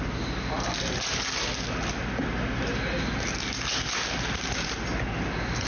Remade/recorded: recorded